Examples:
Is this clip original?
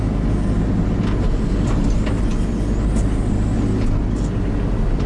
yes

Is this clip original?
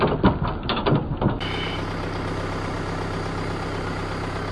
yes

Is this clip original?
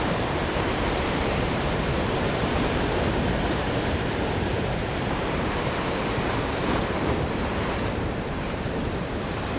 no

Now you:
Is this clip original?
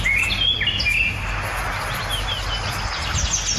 yes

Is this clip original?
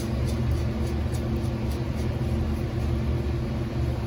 yes